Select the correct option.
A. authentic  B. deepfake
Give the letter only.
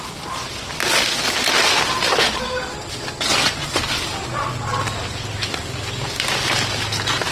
A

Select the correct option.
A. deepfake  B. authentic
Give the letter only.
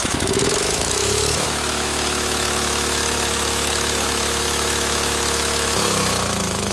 A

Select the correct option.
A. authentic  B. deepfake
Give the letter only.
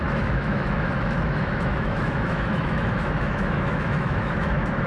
B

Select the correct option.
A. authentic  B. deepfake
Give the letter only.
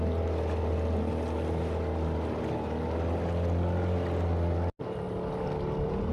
A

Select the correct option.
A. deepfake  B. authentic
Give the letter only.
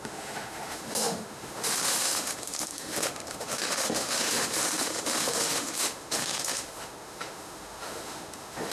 A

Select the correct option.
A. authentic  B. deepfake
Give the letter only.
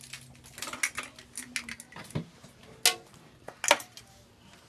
A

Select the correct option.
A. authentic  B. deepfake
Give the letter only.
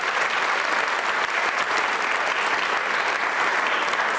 A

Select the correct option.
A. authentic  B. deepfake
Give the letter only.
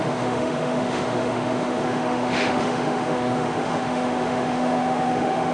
B